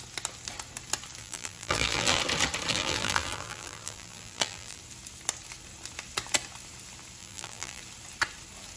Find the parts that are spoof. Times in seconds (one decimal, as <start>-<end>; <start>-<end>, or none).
1.2-2.2; 2.7-4.8; 7.2-7.8